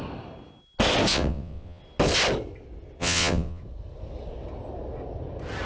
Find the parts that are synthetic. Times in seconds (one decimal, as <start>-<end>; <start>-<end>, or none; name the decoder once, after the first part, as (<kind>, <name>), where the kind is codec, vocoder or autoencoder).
1.1-1.8 (vocoder, WaveNeXt); 3.0-3.6